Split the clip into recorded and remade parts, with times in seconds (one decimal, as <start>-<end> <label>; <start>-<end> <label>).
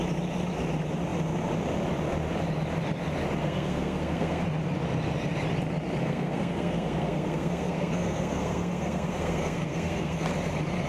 0.0-3.4 recorded; 3.4-4.4 remade; 4.4-6.0 recorded; 6.0-10.3 remade; 10.3-10.9 recorded